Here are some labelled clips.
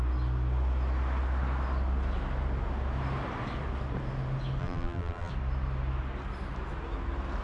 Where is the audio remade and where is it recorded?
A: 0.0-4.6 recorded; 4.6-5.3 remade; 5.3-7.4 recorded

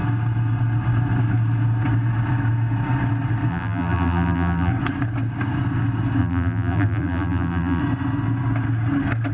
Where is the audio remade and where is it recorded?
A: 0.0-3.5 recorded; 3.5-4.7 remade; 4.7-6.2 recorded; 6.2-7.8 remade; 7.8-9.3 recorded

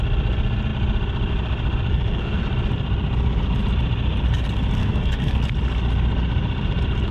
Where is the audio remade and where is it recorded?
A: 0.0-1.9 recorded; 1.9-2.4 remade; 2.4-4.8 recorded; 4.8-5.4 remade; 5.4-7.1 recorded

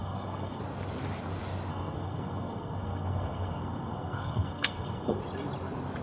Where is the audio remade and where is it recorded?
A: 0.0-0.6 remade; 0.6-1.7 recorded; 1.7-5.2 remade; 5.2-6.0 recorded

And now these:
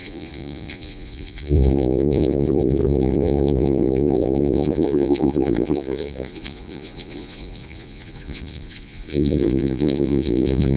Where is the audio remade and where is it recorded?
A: 0.0-10.8 remade

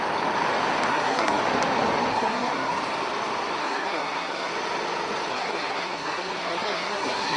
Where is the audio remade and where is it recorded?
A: 0.0-0.9 recorded; 0.9-1.4 remade; 1.4-2.1 recorded; 2.1-2.8 remade; 2.8-3.6 recorded; 3.6-4.5 remade; 4.5-5.3 recorded; 5.3-7.4 remade

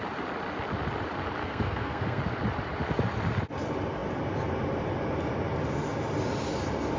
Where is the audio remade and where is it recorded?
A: 0.0-1.4 recorded; 1.4-2.2 remade; 2.2-7.0 recorded